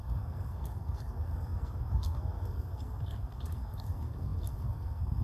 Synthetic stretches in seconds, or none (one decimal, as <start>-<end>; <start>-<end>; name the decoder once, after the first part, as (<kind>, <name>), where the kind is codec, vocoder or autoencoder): 0.0-5.2 (codec, SNAC)